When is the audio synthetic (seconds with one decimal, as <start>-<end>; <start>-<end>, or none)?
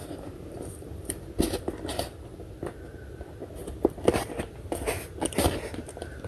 0.0-1.4